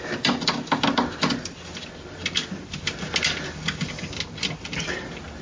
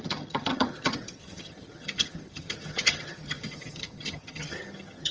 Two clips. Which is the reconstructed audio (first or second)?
second